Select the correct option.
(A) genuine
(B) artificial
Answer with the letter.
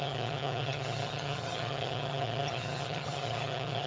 B